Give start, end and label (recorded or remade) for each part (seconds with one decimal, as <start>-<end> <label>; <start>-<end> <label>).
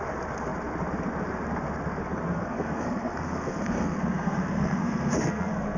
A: 0.0-2.0 recorded; 2.0-5.8 remade